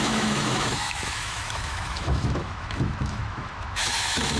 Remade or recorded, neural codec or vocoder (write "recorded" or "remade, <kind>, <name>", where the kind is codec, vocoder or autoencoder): remade, autoencoder, DAC-VAE